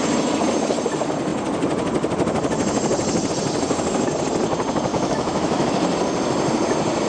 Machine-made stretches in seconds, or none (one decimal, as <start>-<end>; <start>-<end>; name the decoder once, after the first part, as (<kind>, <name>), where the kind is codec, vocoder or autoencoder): 4.9-5.7 (autoencoder, DAC-VAE)